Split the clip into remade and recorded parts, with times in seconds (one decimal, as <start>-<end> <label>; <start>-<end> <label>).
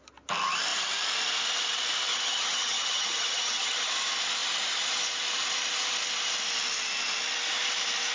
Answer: 0.0-2.1 recorded; 2.1-3.9 remade; 3.9-8.1 recorded